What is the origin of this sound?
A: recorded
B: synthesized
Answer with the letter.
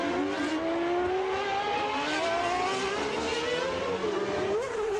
A